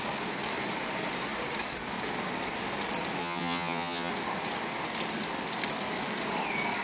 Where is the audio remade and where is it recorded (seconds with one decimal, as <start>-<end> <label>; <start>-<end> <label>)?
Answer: 0.0-3.2 recorded; 3.2-4.1 remade; 4.1-6.8 recorded